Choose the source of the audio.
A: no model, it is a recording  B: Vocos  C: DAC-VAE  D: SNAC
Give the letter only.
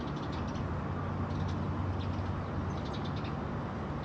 A